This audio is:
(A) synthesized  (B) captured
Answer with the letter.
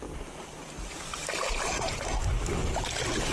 B